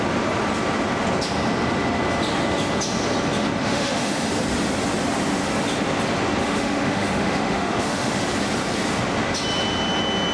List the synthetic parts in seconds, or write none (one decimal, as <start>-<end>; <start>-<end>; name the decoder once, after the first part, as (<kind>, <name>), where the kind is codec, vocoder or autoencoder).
3.6-4.3 (autoencoder, DAC-VAE); 6.4-8.2